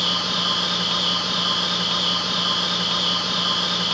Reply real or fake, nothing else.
real